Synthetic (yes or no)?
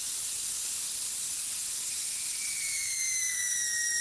no